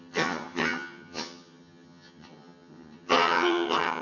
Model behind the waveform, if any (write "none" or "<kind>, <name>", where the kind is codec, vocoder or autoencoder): vocoder, HiFi-GAN